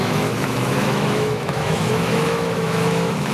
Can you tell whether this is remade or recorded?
remade